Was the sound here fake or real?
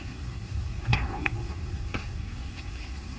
fake